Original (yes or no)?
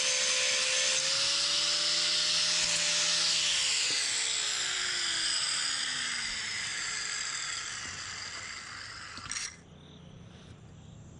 yes